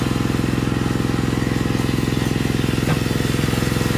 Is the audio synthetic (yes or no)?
no